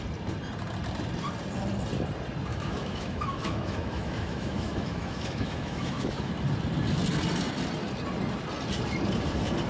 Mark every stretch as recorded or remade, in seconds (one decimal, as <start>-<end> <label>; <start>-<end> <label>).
0.0-2.5 recorded; 2.5-6.3 remade; 6.3-9.7 recorded